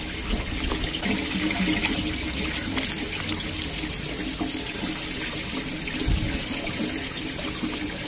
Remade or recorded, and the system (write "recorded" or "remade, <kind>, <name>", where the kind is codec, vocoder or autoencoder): recorded